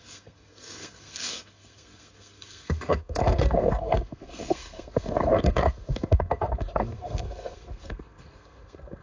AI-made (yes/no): yes